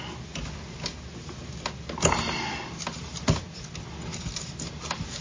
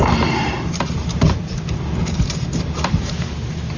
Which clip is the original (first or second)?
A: first